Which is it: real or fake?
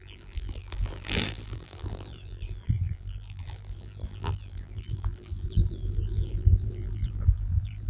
fake